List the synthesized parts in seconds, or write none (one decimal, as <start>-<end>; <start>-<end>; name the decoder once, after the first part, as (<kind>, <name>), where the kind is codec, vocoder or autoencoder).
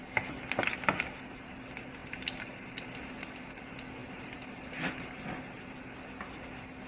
none